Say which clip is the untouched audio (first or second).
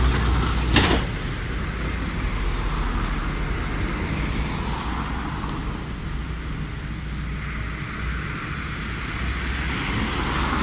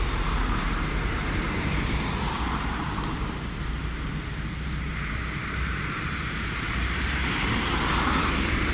first